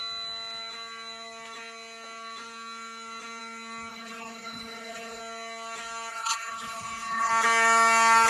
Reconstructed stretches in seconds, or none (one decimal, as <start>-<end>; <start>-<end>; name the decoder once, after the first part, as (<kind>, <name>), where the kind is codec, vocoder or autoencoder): 3.9-5.2 (codec, HILCodec); 6.1-7.3